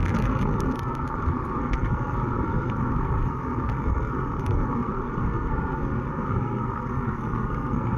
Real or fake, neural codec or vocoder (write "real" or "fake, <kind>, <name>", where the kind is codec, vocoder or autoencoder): fake, codec, SNAC